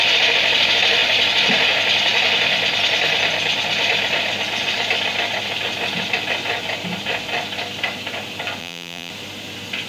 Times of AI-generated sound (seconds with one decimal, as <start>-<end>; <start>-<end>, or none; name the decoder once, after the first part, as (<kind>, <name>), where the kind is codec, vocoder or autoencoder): 8.6-9.1 (vocoder, BigVGAN v2)